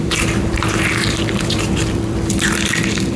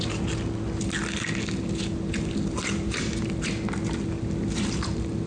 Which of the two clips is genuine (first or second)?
second